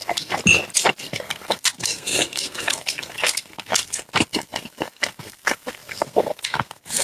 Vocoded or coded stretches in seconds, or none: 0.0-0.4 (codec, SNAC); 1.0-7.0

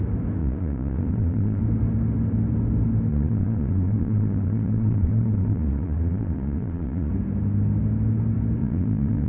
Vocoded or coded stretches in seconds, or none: 0.4-1.6 (vocoder, Vocos); 3.1-7.1; 8.6-9.3

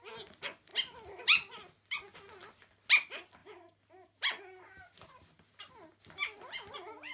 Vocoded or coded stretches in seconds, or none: 3.4-5.7 (vocoder, BigVGAN v2)

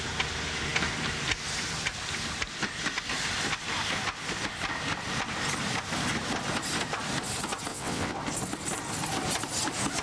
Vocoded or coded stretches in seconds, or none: 7.7-8.2 (vocoder, WaveNeXt)